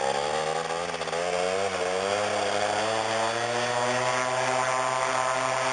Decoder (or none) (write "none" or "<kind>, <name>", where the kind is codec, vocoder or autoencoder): none